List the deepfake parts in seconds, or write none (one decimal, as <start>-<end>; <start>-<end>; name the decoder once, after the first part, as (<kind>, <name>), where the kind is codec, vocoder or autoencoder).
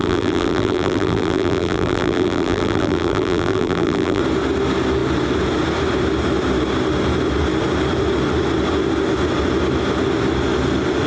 0.0-4.2 (vocoder, BigVGAN v2)